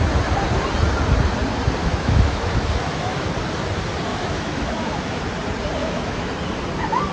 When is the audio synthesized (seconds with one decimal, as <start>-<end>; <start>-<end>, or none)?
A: 1.8-3.3; 4.1-5.2; 5.8-6.4